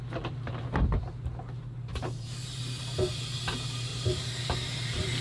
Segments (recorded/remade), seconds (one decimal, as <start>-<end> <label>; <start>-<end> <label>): 0.0-1.9 recorded; 1.9-3.1 remade; 3.1-3.9 recorded; 3.9-5.2 remade